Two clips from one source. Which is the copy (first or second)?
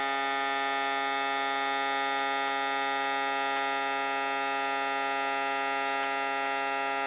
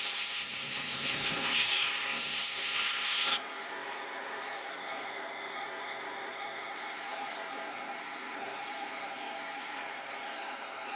second